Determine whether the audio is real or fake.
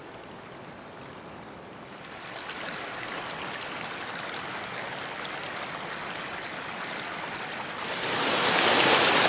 real